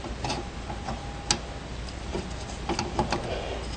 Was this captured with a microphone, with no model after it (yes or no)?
yes